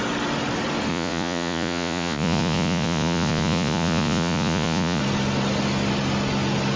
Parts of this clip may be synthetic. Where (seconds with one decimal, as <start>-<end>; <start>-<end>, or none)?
0.9-5.0